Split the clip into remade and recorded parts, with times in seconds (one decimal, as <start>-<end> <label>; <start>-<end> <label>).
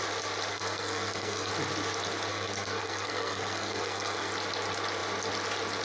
0.0-0.5 recorded; 0.5-1.5 remade; 1.5-2.3 recorded; 2.3-4.3 remade; 4.3-5.8 recorded